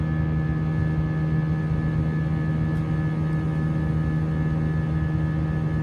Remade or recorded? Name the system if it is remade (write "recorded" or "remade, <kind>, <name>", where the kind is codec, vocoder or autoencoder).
recorded